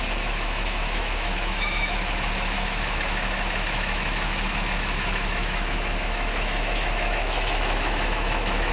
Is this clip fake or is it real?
fake